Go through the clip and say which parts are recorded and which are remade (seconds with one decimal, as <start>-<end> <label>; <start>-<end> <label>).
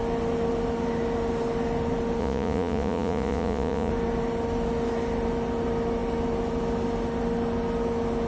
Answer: 0.0-2.2 recorded; 2.2-3.9 remade; 3.9-8.3 recorded